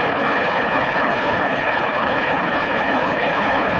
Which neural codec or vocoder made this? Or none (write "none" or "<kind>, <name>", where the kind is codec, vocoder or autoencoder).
codec, HILCodec